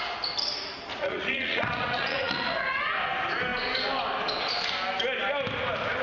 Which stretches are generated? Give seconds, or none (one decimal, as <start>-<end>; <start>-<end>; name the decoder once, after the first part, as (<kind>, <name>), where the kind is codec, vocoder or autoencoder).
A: 0.9-2.8 (vocoder, Vocos)